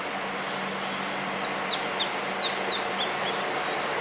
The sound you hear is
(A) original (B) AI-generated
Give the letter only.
A